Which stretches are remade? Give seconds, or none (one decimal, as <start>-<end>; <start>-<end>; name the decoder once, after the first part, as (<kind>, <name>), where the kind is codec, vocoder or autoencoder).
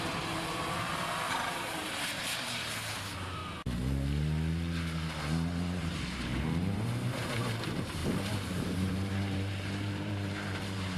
0.0-3.4 (vocoder, BigVGAN v2); 5.8-11.0